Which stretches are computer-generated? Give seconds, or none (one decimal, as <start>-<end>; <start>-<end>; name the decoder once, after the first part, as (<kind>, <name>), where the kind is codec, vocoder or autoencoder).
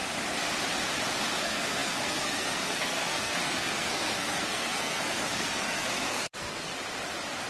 1.4-6.7 (codec, SNAC)